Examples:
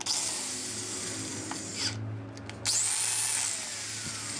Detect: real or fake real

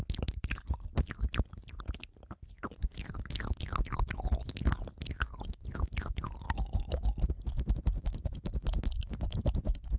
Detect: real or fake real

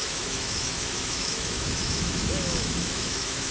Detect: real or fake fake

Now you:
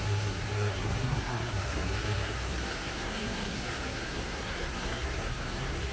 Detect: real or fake fake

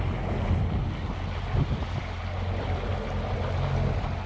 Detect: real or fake real